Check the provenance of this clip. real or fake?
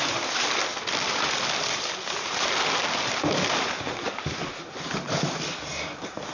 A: real